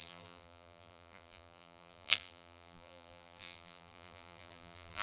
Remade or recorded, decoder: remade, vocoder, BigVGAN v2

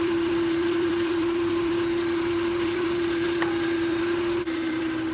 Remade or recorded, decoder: remade, vocoder, BigVGAN v2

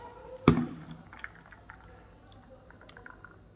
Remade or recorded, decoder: recorded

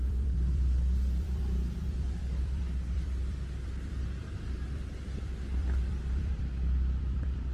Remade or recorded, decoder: remade, vocoder, BigVGAN v2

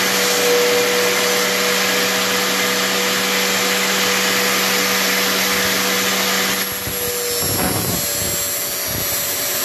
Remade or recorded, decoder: recorded